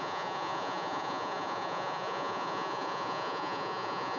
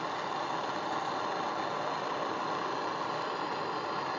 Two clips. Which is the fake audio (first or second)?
first